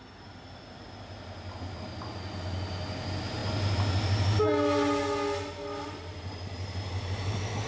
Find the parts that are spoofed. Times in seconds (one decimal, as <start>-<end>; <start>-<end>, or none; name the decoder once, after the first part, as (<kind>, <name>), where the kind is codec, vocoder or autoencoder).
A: none